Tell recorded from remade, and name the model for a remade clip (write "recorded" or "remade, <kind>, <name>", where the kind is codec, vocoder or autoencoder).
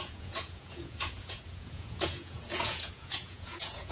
remade, vocoder, Vocos